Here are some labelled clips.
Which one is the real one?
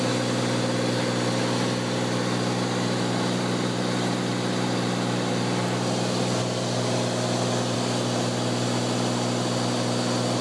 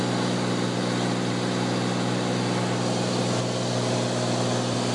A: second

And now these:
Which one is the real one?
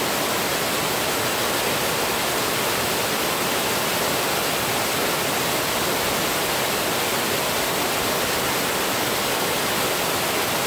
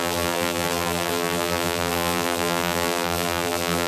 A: first